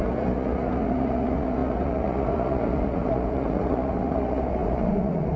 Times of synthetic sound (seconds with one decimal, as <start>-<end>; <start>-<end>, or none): 0.0-5.4